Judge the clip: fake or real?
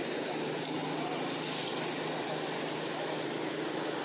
real